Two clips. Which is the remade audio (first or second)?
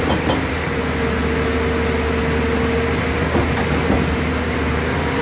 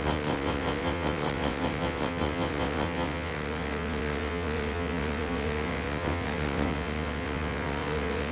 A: second